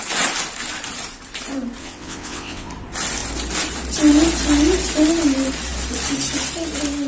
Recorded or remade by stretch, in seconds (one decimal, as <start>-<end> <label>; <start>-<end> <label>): 0.0-1.8 recorded; 1.8-2.7 remade; 2.7-7.1 recorded